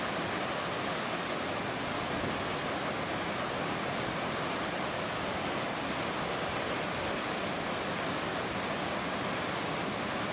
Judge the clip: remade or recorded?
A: recorded